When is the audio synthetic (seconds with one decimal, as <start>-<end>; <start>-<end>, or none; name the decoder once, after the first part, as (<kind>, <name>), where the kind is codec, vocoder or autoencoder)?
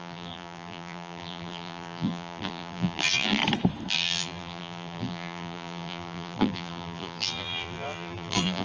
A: 0.0-3.4 (vocoder, BigVGAN v2); 3.9-8.6